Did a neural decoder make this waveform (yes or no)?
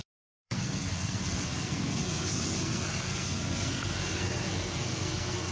yes